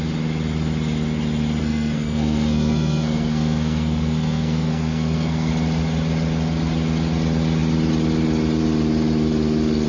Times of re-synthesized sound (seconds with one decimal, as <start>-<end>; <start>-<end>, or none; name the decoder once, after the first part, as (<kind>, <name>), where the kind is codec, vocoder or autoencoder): 1.6-5.5 (codec, SNAC)